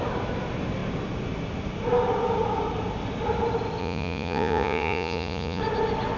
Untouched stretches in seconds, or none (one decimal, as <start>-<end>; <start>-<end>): 0.0-3.8; 5.6-6.2